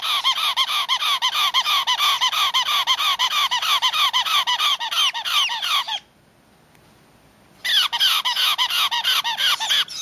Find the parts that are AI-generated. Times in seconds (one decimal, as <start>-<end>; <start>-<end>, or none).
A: none